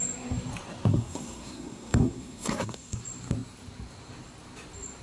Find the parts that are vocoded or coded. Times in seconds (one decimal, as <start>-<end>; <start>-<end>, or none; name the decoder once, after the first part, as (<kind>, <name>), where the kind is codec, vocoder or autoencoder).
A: 0.9-3.0 (codec, SNAC)